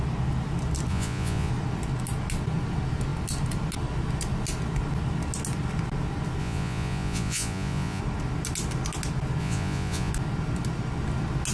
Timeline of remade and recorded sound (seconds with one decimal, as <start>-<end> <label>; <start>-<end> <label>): 0.0-0.9 recorded; 0.9-1.5 remade; 1.5-6.4 recorded; 6.4-8.0 remade; 8.0-9.4 recorded; 9.4-10.1 remade; 10.1-11.5 recorded